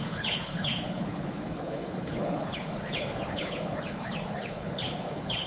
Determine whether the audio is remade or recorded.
remade